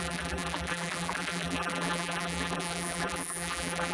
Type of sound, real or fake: fake